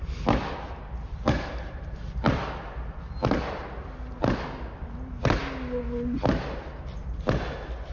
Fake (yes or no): no